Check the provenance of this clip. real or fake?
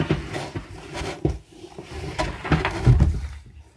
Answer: real